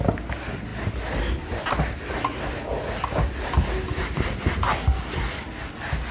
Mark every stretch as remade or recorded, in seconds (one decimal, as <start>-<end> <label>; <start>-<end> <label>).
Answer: 0.0-6.1 recorded